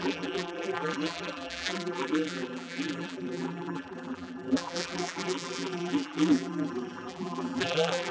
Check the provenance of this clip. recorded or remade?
remade